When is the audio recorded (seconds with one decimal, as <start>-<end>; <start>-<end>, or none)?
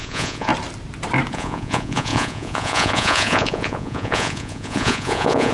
0.5-1.3